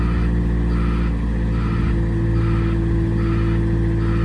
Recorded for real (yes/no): yes